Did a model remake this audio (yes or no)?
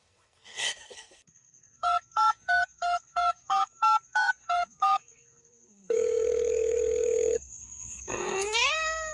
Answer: yes